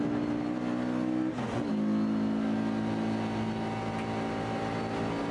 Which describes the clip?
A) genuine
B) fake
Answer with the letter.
A